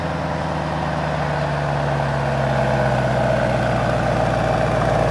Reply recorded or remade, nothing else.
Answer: recorded